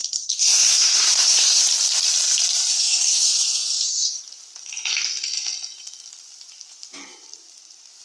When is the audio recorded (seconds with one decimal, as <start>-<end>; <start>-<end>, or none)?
1.6-2.7; 4.2-8.0